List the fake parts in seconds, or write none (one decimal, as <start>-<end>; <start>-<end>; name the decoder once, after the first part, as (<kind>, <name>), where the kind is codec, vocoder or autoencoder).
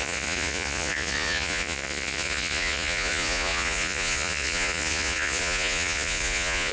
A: 0.0-6.7 (vocoder, Vocos)